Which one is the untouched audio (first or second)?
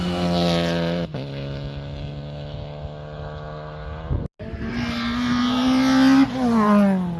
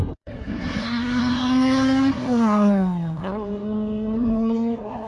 first